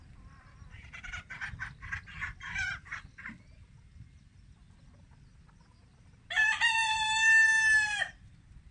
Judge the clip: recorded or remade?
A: recorded